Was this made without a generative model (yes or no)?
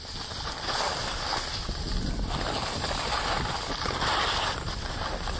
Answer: yes